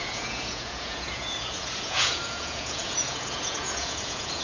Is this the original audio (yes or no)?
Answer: no